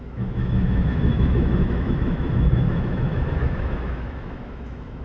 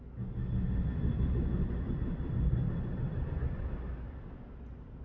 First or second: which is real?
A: second